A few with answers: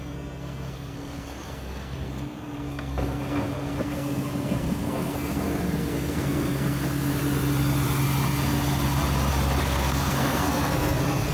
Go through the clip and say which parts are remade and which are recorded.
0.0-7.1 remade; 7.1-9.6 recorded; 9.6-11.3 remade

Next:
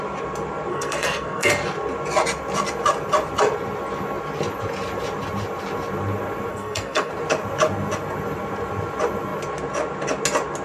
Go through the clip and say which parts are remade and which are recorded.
0.0-0.7 recorded; 0.7-1.5 remade; 1.5-6.5 recorded; 6.5-7.1 remade; 7.1-10.6 recorded

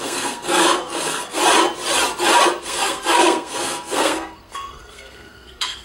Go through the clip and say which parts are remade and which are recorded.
0.0-1.4 remade; 1.4-2.6 recorded; 2.6-5.8 remade